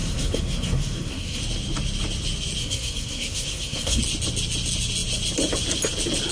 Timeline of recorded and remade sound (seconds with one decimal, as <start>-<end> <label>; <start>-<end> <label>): 0.0-1.4 remade; 1.4-2.6 recorded; 2.6-4.0 remade; 4.0-6.3 recorded